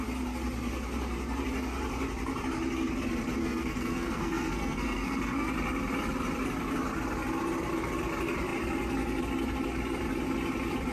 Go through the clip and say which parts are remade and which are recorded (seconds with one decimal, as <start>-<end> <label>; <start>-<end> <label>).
0.0-3.4 recorded; 3.4-5.5 remade; 5.5-10.9 recorded

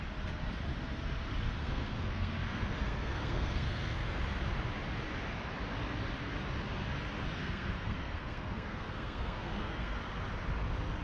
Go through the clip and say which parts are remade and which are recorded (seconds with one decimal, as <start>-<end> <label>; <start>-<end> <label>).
0.0-1.6 recorded; 1.6-4.2 remade; 4.2-7.4 recorded; 7.4-10.0 remade; 10.0-11.0 recorded

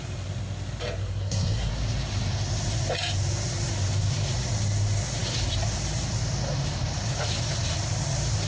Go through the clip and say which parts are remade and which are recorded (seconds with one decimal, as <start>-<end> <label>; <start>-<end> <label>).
0.0-1.0 recorded; 1.0-1.7 remade; 1.7-8.5 recorded

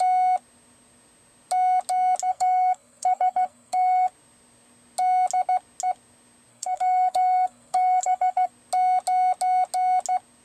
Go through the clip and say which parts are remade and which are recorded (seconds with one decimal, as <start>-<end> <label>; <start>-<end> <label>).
0.0-2.3 recorded; 2.3-4.1 remade; 4.1-6.5 recorded; 6.5-8.5 remade; 8.5-10.4 recorded